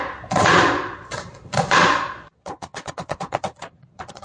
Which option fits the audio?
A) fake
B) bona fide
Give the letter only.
A